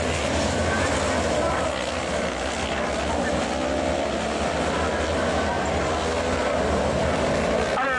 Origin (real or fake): real